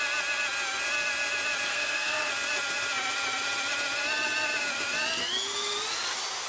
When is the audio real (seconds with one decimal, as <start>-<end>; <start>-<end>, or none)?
0.0-1.7; 2.3-6.5